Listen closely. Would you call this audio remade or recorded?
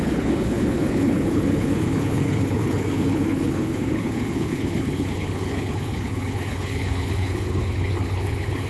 remade